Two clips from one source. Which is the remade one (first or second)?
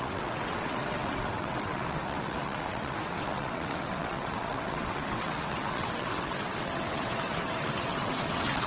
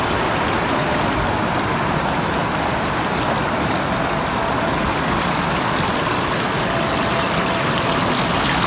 first